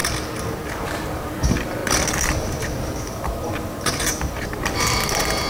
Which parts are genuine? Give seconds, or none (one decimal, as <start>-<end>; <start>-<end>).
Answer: 0.0-0.7; 1.8-2.4